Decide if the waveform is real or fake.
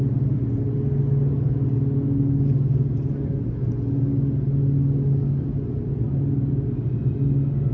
real